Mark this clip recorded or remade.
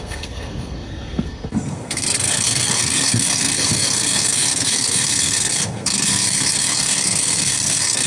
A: remade